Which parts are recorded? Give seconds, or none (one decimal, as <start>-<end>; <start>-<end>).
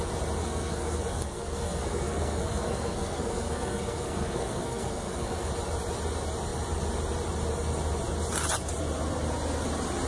0.0-0.4; 5.5-10.1